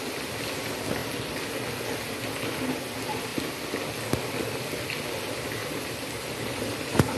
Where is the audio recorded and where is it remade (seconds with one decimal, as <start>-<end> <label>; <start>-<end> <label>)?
0.0-5.6 recorded; 5.6-6.7 remade; 6.7-7.2 recorded